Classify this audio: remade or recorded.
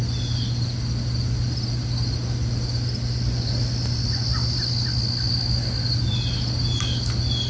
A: recorded